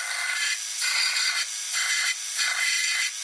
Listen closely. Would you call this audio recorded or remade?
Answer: recorded